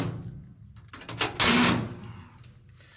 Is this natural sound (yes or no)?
yes